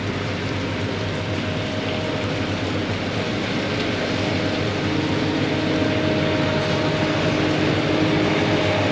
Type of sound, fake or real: real